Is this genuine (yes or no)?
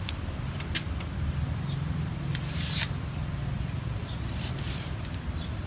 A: no